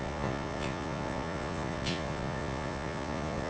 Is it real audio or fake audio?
fake